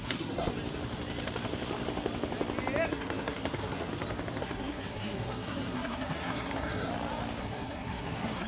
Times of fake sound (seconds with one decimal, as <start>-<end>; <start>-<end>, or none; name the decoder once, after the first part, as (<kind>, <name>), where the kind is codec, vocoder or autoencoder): 0.0-0.5 (codec, SNAC); 2.9-3.9; 4.4-6.9; 7.4-8.5